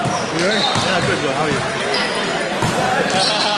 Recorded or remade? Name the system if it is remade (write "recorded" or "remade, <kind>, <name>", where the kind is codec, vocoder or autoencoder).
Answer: recorded